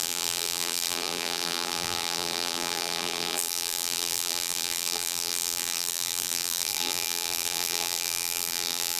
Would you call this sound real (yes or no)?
no